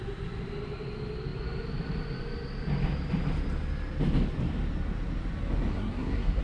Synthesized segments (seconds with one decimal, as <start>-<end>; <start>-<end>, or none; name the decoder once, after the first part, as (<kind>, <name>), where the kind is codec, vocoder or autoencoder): 5.7-6.4 (codec, SNAC)